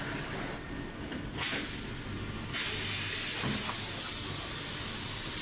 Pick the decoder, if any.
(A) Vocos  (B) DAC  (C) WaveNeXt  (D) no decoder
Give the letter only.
D